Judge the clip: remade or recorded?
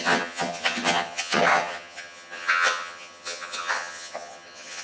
remade